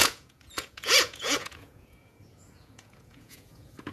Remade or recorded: remade